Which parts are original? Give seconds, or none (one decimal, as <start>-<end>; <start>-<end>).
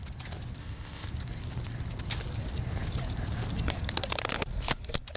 0.0-0.6; 1.1-5.2